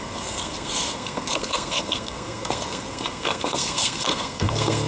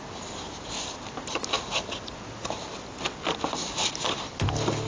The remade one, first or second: first